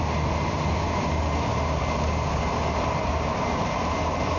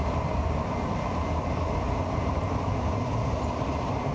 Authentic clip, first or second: first